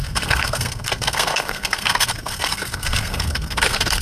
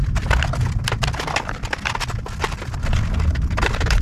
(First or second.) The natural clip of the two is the second